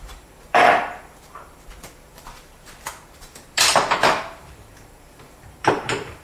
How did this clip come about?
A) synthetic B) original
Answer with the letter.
A